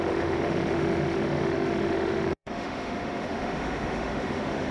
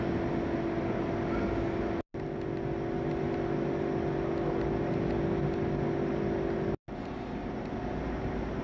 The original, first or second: second